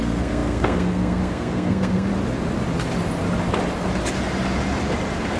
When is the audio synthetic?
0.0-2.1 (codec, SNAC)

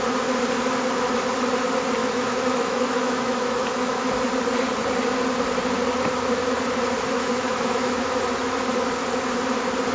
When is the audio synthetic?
2.0-4.1 (autoencoder, DAC-VAE); 7.1-8.2

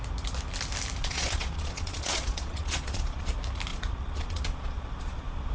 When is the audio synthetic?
1.0-3.3 (vocoder, Vocos); 3.7-5.5

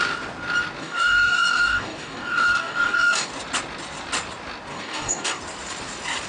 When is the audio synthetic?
0.8-3.3 (codec, DAC); 4.7-5.4

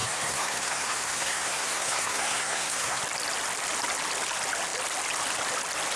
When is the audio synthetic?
0.0-3.0 (codec, SNAC)